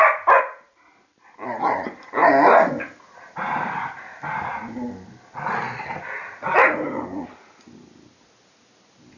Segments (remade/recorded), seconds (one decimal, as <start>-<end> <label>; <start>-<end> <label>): 0.0-9.2 recorded